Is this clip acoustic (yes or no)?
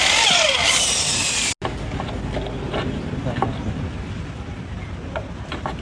yes